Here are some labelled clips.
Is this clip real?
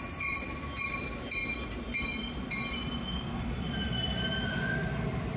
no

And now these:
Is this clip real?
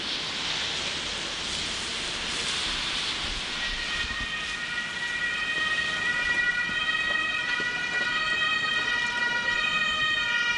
yes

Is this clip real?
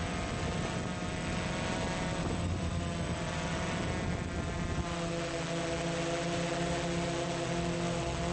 yes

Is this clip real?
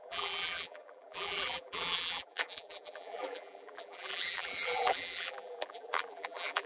no